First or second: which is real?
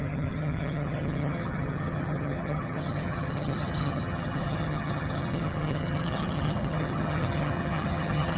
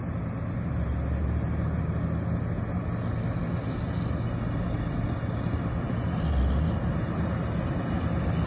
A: second